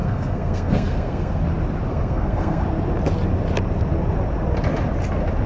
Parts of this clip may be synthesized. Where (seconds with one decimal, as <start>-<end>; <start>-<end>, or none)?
0.0-1.4; 1.9-2.6